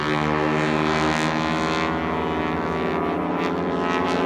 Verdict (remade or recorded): recorded